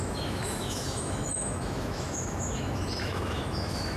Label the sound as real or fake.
fake